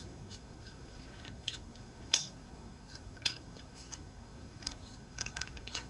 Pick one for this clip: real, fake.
fake